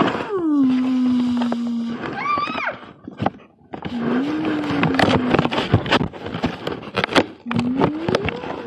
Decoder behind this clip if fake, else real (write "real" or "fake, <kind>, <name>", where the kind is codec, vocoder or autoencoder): real